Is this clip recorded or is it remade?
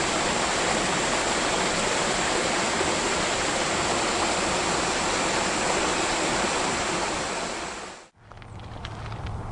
recorded